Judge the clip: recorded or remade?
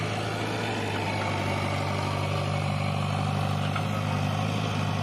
recorded